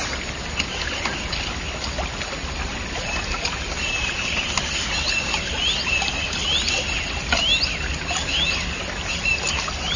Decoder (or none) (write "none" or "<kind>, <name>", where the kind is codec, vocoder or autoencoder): none